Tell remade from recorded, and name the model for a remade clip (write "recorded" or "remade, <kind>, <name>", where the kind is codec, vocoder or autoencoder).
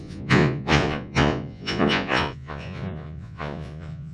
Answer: remade, vocoder, Vocos